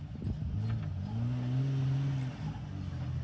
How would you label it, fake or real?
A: real